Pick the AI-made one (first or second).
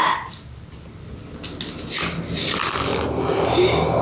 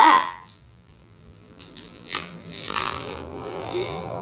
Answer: second